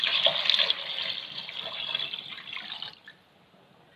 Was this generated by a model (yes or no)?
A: no